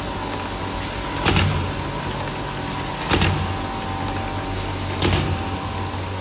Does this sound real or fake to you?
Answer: real